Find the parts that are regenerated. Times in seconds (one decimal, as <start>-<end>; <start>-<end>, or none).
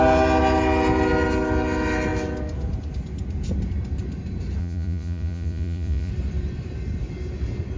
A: 4.6-6.1